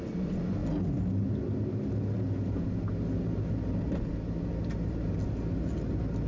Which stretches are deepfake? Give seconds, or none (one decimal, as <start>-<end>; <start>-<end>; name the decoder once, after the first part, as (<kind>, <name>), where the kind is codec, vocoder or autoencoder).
none